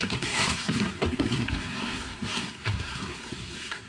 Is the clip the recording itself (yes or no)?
no